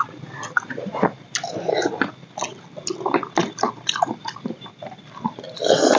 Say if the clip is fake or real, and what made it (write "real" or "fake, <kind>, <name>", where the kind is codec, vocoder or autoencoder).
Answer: real